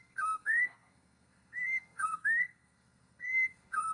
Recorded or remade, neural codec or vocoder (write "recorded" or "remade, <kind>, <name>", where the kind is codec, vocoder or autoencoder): remade, codec, SNAC